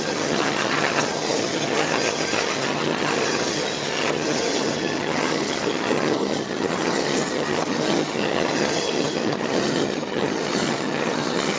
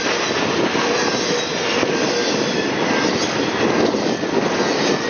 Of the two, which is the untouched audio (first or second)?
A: second